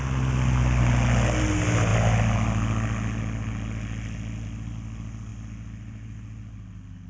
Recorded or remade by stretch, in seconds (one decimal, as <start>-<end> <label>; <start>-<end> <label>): 0.0-7.1 recorded